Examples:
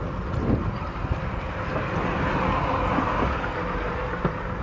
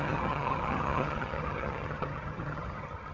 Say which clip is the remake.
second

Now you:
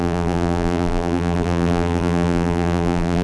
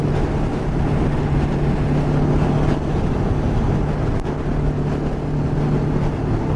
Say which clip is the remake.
first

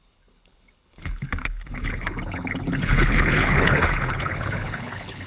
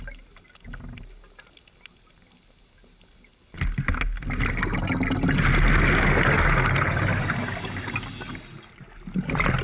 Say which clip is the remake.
first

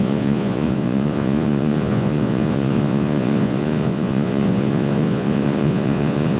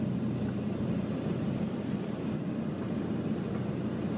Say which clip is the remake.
first